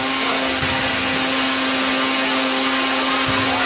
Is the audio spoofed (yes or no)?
no